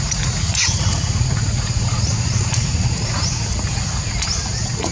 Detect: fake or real fake